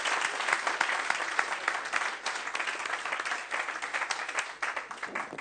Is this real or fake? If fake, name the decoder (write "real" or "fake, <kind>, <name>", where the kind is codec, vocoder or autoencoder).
real